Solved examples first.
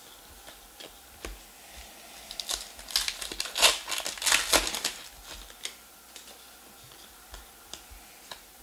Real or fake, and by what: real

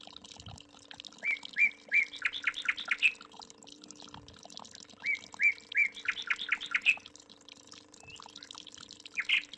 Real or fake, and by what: real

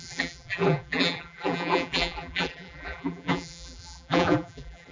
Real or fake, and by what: fake, vocoder, BigVGAN v2